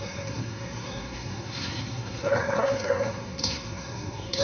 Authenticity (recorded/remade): remade